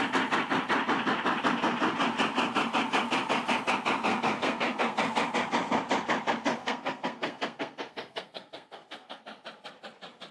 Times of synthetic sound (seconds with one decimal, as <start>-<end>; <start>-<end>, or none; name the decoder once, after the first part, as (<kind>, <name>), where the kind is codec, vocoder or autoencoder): 4.1-5.0 (codec, SNAC); 6.6-9.2